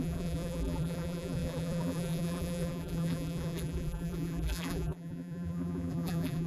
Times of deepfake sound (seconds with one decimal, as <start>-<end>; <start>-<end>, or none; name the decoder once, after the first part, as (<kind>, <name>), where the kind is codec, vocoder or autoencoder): 0.0-6.5 (vocoder, BigVGAN v2)